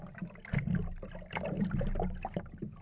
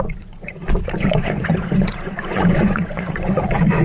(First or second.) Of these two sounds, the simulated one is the second